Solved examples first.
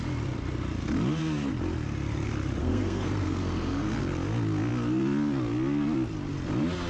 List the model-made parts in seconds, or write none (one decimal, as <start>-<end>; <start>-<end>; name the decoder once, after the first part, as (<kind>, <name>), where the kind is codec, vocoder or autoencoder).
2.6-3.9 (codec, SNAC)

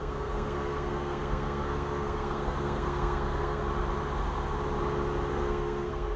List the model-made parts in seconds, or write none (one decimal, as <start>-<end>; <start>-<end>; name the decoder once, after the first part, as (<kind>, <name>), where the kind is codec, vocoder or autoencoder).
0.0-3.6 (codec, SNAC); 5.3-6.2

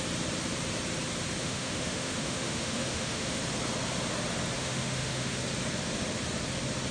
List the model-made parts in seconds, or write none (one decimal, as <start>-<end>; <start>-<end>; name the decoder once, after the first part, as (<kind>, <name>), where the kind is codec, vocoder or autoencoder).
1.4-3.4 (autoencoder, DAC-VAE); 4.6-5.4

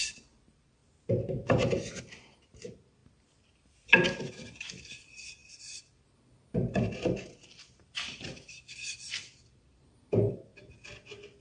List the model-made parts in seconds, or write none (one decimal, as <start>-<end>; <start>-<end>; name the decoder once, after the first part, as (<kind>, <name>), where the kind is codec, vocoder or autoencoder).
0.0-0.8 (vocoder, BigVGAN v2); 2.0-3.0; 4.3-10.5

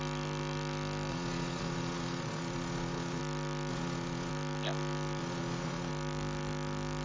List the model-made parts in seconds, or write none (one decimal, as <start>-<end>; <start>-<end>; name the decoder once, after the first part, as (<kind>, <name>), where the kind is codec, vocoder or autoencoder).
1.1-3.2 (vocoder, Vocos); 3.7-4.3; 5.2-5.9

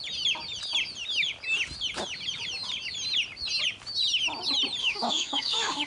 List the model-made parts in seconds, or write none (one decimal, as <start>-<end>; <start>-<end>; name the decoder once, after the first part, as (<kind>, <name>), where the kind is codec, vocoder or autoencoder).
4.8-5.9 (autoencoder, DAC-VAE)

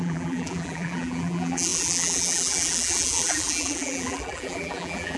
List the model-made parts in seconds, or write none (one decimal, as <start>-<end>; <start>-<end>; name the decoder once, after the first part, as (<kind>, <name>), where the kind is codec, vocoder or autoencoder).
0.0-5.2 (vocoder, BigVGAN v2)